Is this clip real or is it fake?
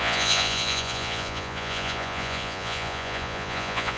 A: fake